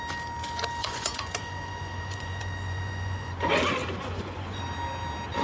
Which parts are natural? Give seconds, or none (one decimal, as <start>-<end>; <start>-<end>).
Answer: 0.0-0.8; 3.4-3.8; 4.6-5.4